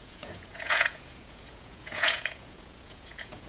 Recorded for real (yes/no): no